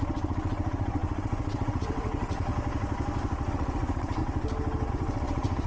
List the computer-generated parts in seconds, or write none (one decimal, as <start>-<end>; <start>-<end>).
0.0-2.5; 3.5-4.2; 4.9-5.7